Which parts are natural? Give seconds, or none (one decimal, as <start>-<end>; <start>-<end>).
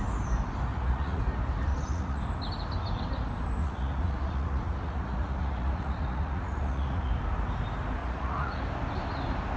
0.0-0.7; 1.2-1.7; 2.2-3.6; 7.1-8.0; 8.6-9.6